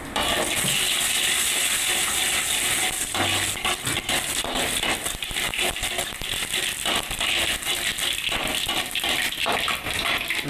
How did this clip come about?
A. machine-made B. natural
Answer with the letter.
B